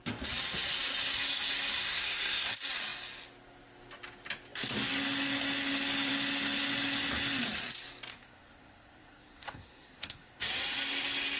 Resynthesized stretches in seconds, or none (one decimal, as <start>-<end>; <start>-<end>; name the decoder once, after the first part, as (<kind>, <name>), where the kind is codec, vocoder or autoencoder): 1.9-2.5 (codec, SNAC); 8.1-10.4